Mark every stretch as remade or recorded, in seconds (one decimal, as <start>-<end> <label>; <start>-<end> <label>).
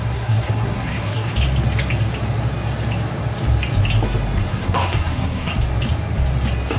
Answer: 0.0-1.3 remade; 1.3-4.5 recorded; 4.5-5.5 remade; 5.5-6.8 recorded